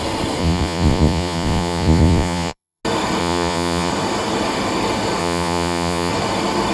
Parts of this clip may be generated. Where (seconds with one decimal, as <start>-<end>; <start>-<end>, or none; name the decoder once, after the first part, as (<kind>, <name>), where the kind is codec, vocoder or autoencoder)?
0.4-2.8 (vocoder, Vocos); 3.2-3.9; 5.2-6.1